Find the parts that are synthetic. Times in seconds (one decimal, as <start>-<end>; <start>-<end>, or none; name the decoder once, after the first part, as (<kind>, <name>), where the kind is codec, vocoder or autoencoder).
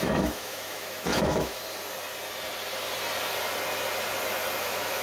0.0-1.6 (autoencoder, DAC-VAE); 4.6-5.0